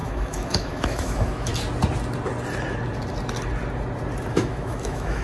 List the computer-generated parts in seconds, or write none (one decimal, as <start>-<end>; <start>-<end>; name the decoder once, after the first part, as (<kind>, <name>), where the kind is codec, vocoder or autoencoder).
0.0-1.5 (autoencoder, DAC-VAE); 4.3-5.2